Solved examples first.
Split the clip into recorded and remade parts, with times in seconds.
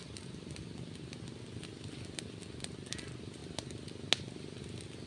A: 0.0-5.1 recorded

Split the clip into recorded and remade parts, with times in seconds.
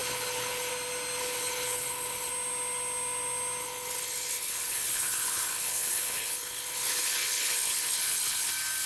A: 0.0-0.7 remade; 0.7-1.2 recorded; 1.2-2.3 remade; 2.3-3.6 recorded; 3.6-8.5 remade; 8.5-8.9 recorded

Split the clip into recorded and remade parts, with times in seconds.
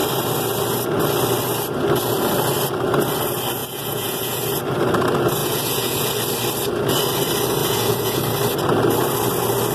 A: 0.0-3.6 recorded; 3.6-4.4 remade; 4.4-5.4 recorded; 5.4-6.1 remade; 6.1-7.6 recorded; 7.6-8.2 remade; 8.2-9.7 recorded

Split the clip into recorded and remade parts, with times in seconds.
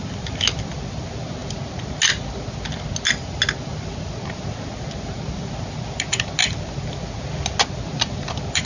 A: 0.0-8.7 recorded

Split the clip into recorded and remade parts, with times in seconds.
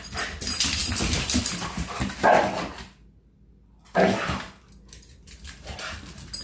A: 0.0-6.4 recorded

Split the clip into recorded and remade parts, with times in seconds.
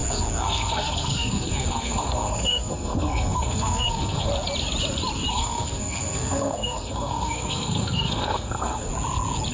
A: 0.0-4.3 remade; 4.3-5.3 recorded; 5.3-8.9 remade; 8.9-9.5 recorded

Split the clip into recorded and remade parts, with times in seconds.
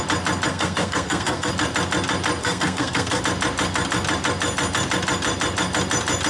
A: 0.0-0.5 recorded; 0.5-1.5 remade; 1.5-2.4 recorded; 2.4-3.2 remade; 3.2-6.3 recorded